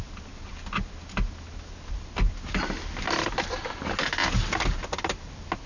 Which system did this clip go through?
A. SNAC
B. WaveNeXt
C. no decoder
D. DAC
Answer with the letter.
C